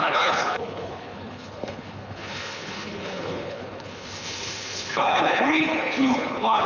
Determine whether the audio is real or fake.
fake